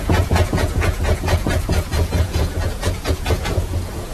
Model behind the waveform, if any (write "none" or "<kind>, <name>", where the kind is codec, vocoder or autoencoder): vocoder, Vocos